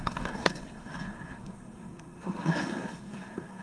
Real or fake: fake